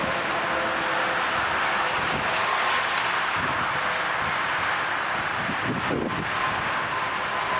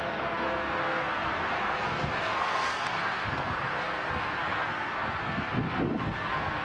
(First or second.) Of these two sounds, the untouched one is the first